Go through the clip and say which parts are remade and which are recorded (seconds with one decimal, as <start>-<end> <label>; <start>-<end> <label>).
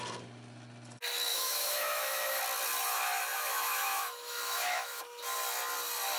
0.0-1.3 recorded; 1.3-2.4 remade; 2.4-2.9 recorded; 2.9-5.0 remade; 5.0-6.2 recorded